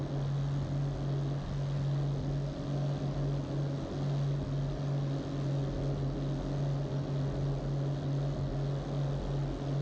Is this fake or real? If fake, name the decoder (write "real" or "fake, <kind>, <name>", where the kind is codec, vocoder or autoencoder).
real